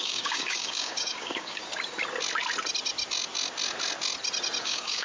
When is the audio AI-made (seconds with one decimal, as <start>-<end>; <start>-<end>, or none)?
0.0-1.6; 4.6-5.0